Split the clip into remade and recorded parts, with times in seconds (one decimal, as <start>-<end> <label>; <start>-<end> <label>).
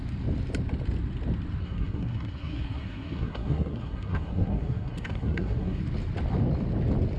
0.0-1.6 recorded; 1.6-5.8 remade; 5.8-7.2 recorded